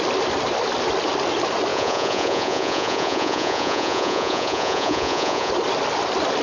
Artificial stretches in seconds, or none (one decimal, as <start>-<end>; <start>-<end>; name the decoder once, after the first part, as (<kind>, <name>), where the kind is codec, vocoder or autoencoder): 1.7-5.5 (vocoder, Vocos)